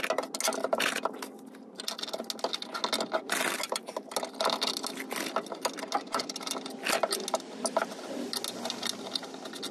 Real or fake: real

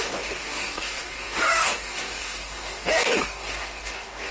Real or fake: fake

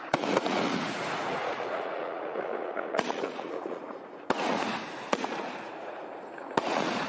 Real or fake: fake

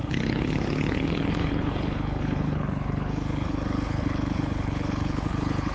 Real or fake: fake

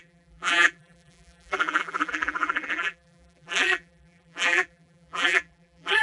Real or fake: fake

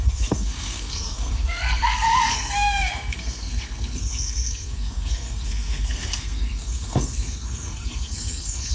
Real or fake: fake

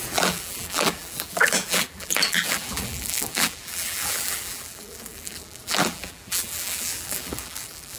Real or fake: fake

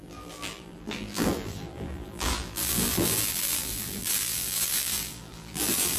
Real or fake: fake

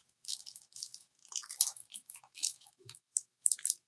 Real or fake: fake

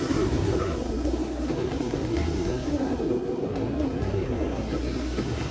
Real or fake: fake